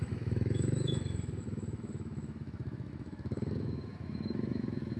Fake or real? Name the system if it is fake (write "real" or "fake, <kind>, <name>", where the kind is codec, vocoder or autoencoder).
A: fake, autoencoder, DAC-VAE